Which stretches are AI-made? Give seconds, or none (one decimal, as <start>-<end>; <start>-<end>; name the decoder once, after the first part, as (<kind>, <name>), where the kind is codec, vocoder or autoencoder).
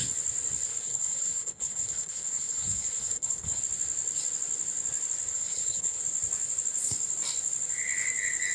0.7-3.6 (codec, HILCodec); 5.3-6.0